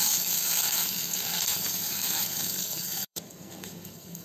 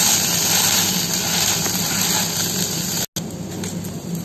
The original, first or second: second